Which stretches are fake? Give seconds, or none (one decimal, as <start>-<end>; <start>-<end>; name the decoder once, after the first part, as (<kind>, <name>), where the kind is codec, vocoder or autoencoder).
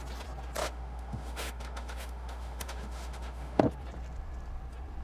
0.6-3.6 (autoencoder, DAC-VAE)